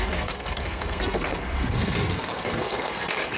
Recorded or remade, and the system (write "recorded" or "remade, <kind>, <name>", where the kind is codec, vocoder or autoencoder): remade, codec, SNAC